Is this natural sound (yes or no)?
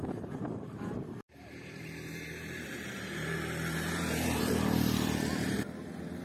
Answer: no